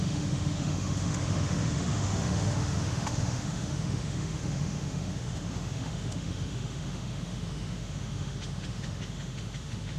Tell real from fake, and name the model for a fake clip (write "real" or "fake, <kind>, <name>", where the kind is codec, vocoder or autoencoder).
fake, autoencoder, DAC-VAE